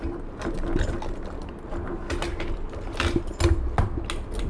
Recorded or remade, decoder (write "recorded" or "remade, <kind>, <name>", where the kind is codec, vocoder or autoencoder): recorded